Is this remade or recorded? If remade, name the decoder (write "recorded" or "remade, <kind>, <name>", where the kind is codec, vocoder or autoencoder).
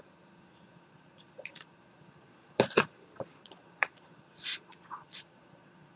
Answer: remade, vocoder, Vocos